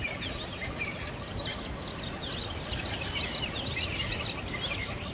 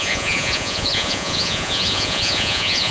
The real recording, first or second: first